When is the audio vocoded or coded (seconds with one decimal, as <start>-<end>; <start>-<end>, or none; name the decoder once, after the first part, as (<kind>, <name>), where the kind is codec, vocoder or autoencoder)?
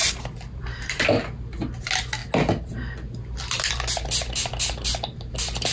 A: none